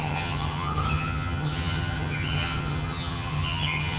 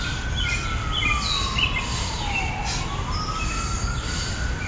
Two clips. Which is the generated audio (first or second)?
first